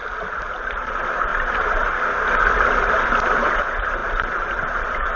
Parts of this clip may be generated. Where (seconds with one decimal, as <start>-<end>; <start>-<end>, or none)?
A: none